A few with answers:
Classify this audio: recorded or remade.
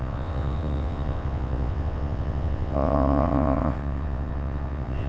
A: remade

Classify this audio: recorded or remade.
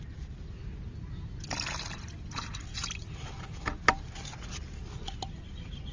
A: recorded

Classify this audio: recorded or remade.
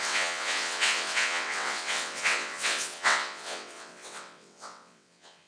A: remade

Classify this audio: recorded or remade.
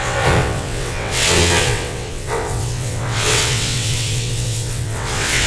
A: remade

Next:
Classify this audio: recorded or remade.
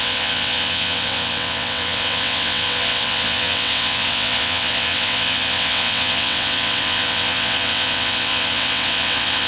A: remade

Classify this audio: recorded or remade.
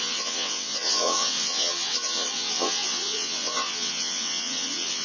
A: remade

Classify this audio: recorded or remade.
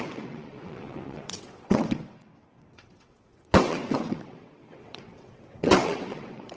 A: remade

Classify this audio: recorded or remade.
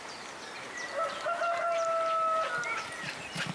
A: recorded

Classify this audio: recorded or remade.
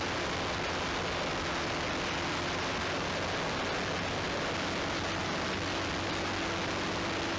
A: recorded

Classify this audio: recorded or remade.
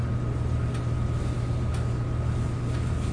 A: recorded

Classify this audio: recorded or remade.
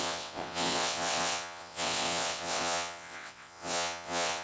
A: remade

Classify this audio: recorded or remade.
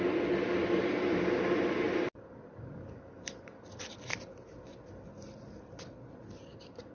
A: recorded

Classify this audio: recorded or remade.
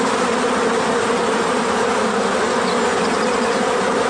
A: recorded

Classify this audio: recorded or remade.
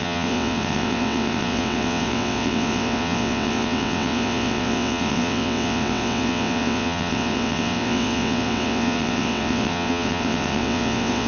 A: remade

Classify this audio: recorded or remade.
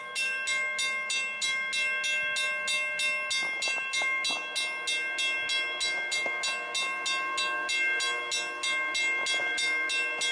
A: recorded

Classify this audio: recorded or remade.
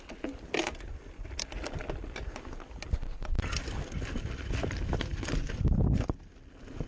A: recorded